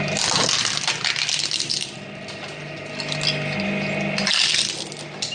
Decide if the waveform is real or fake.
real